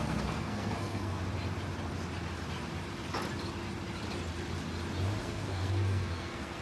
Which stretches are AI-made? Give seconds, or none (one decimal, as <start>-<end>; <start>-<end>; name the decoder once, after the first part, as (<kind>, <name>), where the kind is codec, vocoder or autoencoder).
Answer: 0.0-1.2 (codec, SNAC); 5.2-6.6